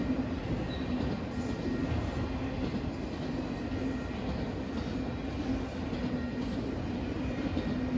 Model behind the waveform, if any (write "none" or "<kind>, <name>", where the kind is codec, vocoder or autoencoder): none